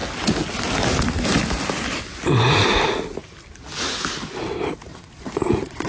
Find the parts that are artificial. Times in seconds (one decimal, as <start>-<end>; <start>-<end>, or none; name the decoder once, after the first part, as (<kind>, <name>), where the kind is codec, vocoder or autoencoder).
4.9-5.9 (vocoder, Vocos)